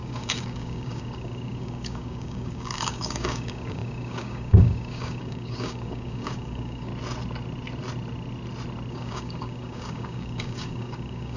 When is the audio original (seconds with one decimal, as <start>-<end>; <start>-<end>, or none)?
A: 6.9-8.9